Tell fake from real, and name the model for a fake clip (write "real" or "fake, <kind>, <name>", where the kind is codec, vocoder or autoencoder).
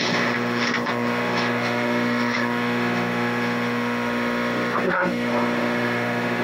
fake, autoencoder, DAC-VAE